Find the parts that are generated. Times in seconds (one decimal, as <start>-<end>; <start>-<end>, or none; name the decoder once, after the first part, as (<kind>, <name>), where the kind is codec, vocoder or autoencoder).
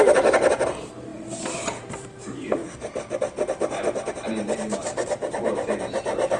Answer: none